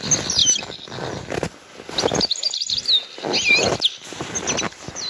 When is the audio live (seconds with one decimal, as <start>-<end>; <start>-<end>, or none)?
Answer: 0.0-5.1